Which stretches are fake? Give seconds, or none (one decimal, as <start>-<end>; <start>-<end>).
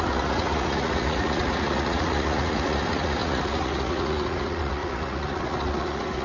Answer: 0.0-6.2